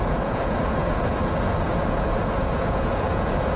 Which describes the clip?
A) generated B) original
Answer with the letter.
A